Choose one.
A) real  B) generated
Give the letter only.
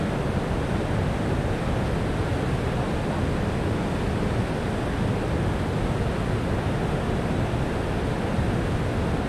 A